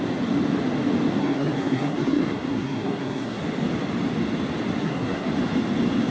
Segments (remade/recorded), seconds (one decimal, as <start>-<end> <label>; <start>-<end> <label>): 0.0-1.2 recorded; 1.2-3.4 remade; 3.4-4.8 recorded; 4.8-5.3 remade; 5.3-6.1 recorded